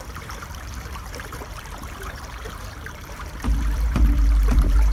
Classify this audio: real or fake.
fake